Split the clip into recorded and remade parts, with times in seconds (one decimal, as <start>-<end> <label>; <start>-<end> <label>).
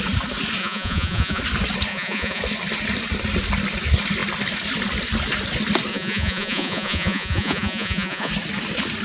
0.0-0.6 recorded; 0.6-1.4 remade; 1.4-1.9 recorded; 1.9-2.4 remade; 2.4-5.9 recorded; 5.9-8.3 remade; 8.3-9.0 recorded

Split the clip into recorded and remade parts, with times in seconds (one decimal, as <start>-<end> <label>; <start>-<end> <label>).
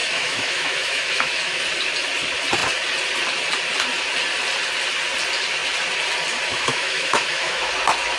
0.0-1.6 remade; 1.6-6.5 recorded; 6.5-7.7 remade; 7.7-8.2 recorded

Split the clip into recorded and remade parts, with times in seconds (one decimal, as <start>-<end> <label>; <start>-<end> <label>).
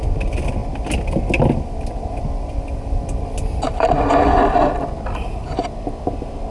0.0-6.5 recorded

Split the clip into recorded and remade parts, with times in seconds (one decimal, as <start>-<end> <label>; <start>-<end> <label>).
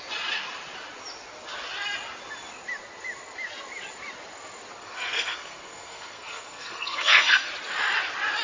0.0-4.8 recorded; 4.8-7.5 remade; 7.5-8.4 recorded